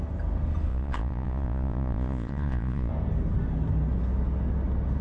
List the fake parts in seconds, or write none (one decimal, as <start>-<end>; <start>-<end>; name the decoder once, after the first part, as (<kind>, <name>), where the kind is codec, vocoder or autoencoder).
0.7-2.9 (vocoder, Vocos)